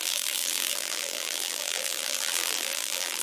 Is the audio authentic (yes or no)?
no